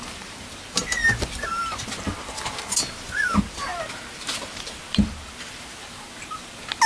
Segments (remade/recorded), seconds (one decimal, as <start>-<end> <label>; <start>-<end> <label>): 0.0-6.9 recorded